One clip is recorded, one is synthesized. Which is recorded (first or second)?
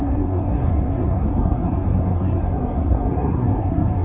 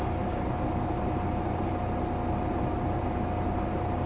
second